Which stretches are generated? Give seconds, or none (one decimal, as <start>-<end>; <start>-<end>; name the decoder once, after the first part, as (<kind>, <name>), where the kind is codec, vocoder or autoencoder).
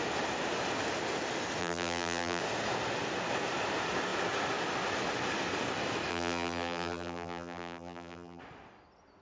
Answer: 1.6-2.4 (vocoder, BigVGAN v2); 6.1-8.4